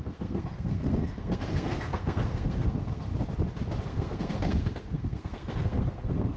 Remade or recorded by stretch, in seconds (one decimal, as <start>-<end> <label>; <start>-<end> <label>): 0.0-3.1 remade; 3.1-3.8 recorded; 3.8-6.4 remade